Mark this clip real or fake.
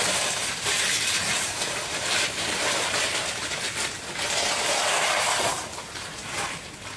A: fake